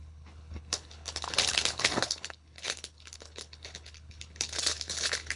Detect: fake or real fake